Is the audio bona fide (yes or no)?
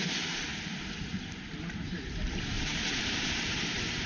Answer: no